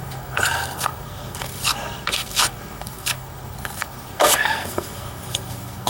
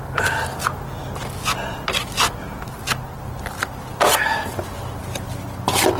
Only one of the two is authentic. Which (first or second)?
second